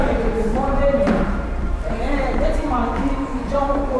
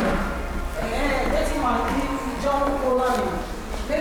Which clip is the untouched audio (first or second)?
second